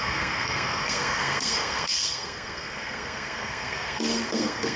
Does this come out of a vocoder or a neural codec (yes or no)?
yes